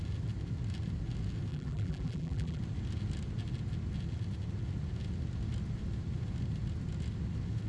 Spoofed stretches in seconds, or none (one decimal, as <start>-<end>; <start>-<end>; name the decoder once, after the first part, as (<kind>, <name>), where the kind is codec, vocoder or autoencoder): 1.5-2.6 (vocoder, BigVGAN v2)